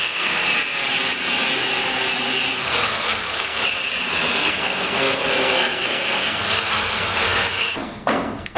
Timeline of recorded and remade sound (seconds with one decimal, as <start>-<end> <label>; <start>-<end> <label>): 0.0-0.4 remade; 0.4-2.6 recorded; 2.6-3.6 remade; 3.6-4.3 recorded; 4.3-8.6 remade